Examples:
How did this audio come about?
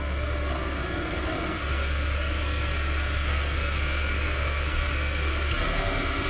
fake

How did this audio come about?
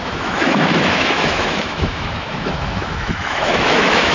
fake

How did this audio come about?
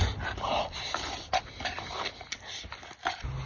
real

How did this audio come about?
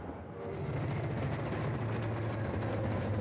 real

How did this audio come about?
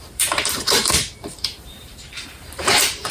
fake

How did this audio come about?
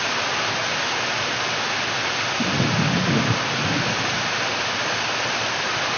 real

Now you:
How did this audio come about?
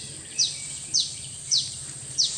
fake